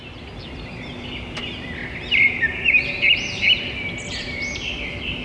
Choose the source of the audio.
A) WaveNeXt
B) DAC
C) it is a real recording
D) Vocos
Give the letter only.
C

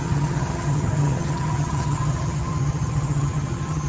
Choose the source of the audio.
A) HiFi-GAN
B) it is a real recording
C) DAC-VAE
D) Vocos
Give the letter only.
A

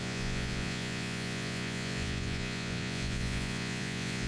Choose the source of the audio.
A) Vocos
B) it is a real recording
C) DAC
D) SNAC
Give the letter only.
A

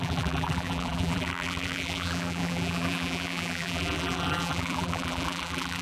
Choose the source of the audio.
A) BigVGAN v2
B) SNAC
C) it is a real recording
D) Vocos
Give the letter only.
A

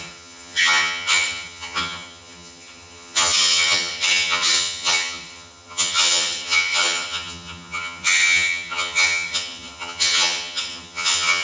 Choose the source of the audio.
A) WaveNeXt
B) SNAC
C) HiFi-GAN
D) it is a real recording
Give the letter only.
C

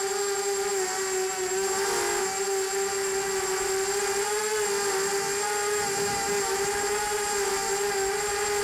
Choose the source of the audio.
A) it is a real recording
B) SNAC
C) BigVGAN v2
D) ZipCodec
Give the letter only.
A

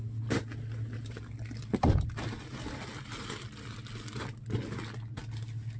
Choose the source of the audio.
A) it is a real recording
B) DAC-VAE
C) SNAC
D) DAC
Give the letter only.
A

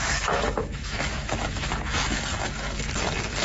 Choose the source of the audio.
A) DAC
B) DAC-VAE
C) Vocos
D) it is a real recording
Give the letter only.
B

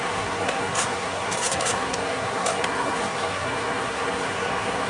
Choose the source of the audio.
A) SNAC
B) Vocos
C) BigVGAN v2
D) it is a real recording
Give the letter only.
A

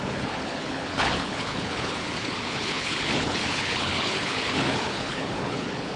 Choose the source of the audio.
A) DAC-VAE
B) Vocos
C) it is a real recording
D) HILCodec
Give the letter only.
D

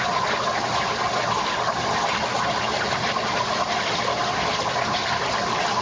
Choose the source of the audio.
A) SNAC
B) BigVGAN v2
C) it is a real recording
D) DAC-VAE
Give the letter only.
C